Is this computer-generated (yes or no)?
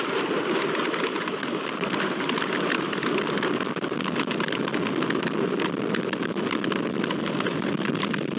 yes